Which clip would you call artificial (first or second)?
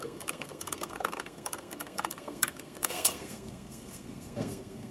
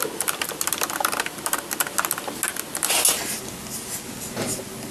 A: first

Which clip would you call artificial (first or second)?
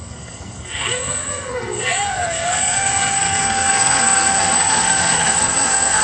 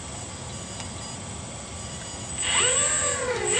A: first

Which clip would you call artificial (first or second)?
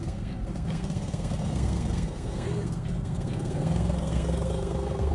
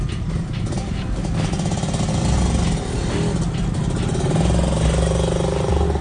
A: first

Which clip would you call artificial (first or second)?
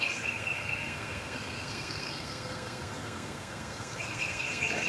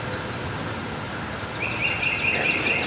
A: first